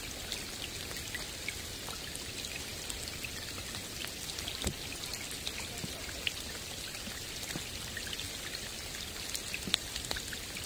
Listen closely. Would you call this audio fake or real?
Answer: real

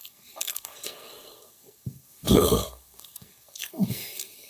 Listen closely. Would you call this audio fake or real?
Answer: fake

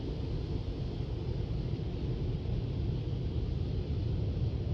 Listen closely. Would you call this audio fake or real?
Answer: real